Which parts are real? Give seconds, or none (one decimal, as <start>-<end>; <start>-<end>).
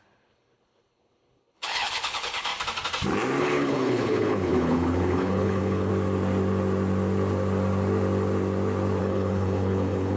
2.5-3.4; 5.9-9.0